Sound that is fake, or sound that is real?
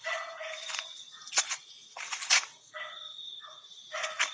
real